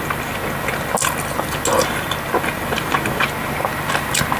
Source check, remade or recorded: recorded